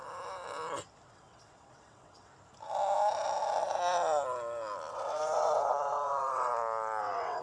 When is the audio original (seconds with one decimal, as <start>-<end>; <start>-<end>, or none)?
0.0-1.1; 2.3-4.9; 6.5-7.0